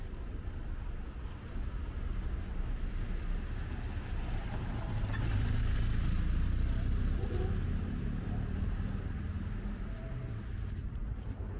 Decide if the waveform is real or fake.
real